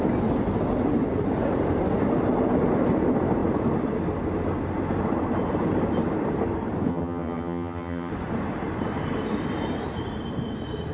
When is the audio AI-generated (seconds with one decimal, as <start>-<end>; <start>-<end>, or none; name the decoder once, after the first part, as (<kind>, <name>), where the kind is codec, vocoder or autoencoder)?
6.9-8.1 (vocoder, HiFi-GAN)